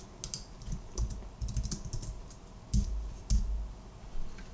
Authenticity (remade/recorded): recorded